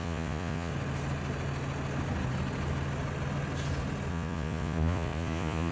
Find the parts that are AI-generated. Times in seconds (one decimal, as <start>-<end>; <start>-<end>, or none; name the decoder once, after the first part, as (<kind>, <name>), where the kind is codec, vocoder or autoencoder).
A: 0.0-0.7 (vocoder, Vocos); 4.1-5.7